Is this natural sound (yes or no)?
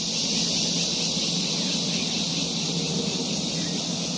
yes